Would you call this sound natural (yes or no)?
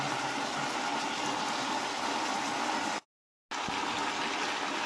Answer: yes